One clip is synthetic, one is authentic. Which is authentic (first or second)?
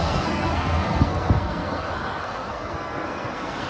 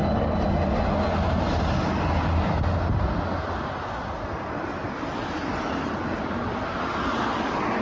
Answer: second